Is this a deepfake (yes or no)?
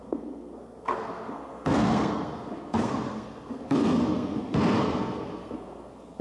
yes